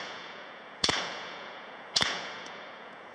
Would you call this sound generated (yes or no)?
yes